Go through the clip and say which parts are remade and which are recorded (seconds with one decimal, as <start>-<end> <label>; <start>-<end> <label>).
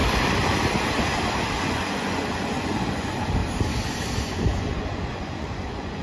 0.0-1.6 recorded; 1.6-3.4 remade; 3.4-4.2 recorded; 4.2-6.0 remade